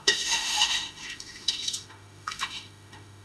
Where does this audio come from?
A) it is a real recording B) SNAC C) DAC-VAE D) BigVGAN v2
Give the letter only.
C